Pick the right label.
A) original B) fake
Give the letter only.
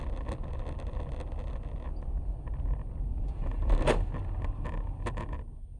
A